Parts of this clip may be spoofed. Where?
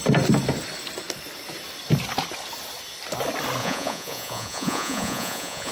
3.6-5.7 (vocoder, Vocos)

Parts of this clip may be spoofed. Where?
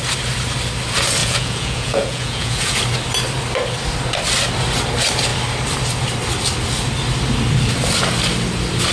1.2-2.8 (vocoder, Vocos)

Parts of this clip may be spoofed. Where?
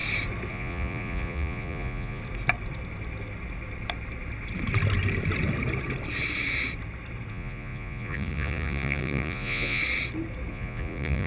0.5-2.2 (vocoder, Vocos); 7.3-9.8; 10.5-11.3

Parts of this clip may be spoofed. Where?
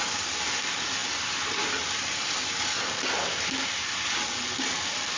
none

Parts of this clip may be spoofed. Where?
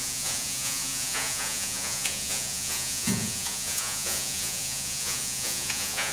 0.0-6.1 (vocoder, Vocos)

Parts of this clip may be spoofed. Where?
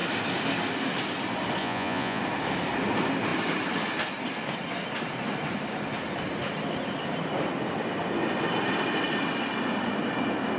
1.6-2.2 (vocoder, Vocos)